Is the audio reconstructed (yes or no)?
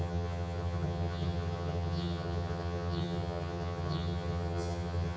yes